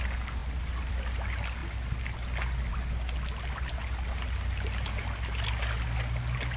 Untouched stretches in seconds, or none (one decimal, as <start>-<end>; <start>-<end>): 0.0-6.6